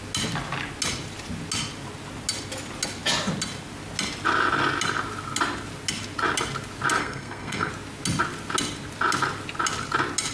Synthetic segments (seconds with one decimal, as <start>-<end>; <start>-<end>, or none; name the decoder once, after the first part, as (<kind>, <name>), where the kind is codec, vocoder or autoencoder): 7.0-7.7 (codec, SNAC)